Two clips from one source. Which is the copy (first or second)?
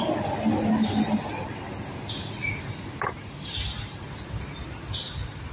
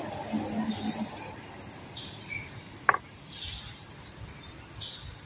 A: second